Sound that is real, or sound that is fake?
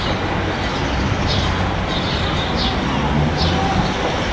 real